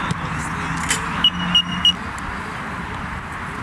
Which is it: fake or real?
real